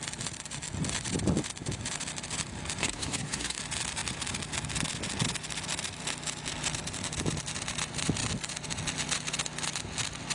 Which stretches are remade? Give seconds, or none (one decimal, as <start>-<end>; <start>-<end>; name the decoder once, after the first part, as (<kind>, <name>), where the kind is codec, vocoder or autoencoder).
2.8-3.6 (codec, SNAC)